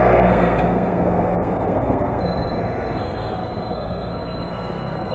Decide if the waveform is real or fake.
fake